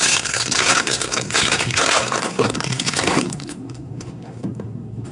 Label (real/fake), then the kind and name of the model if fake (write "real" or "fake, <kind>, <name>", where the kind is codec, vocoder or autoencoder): fake, codec, SNAC